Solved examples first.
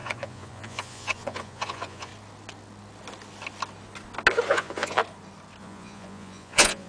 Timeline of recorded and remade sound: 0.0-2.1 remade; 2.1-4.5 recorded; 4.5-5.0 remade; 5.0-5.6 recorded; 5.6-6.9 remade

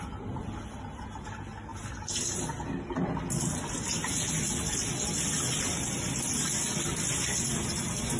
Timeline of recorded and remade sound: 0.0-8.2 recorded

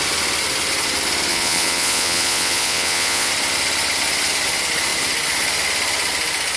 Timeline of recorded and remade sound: 0.0-1.3 recorded; 1.3-3.3 remade; 3.3-6.6 recorded